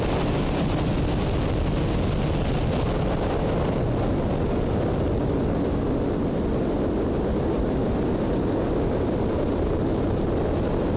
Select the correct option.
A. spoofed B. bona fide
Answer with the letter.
B